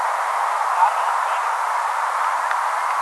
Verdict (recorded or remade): recorded